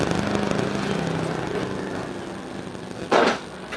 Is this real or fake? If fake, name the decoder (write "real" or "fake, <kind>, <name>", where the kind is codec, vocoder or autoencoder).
real